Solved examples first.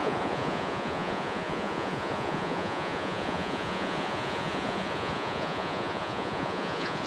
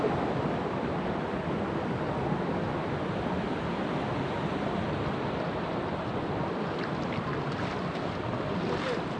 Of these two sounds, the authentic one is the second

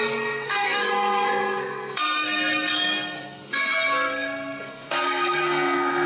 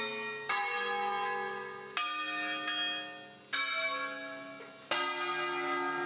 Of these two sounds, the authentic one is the second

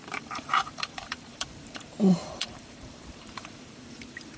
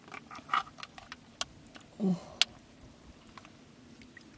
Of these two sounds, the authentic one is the second